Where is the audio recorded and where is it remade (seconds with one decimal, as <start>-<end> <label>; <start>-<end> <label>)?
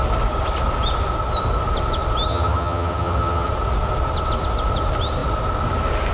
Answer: 0.0-2.3 recorded; 2.3-3.5 remade; 3.5-6.1 recorded